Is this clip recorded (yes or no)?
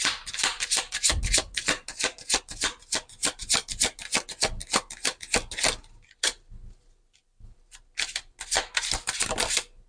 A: yes